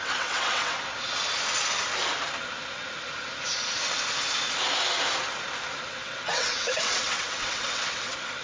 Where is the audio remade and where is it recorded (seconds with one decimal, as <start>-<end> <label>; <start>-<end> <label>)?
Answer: 0.0-0.9 remade; 0.9-5.9 recorded; 5.9-8.4 remade